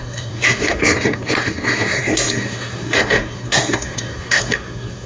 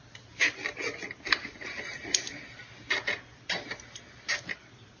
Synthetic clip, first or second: first